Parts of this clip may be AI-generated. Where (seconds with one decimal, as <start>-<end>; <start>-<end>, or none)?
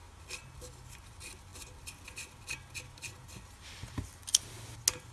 none